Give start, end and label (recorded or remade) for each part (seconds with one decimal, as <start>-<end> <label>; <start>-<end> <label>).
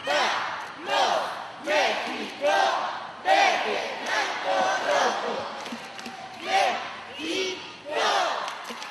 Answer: 0.0-5.0 recorded; 5.0-5.6 remade; 5.6-8.9 recorded